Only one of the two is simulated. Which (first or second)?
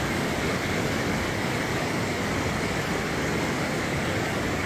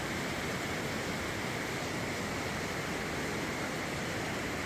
first